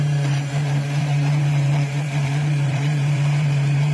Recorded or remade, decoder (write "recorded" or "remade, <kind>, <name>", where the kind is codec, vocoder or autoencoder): remade, vocoder, BigVGAN v2